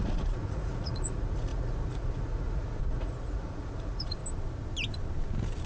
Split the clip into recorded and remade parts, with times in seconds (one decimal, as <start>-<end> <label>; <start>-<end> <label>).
0.0-4.2 remade; 4.2-5.7 recorded